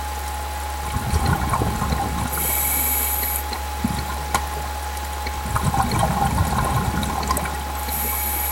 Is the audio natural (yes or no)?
yes